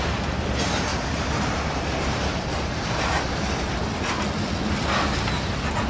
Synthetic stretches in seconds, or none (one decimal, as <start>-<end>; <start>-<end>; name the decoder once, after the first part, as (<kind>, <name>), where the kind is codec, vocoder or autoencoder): 0.9-3.3 (vocoder, BigVGAN v2)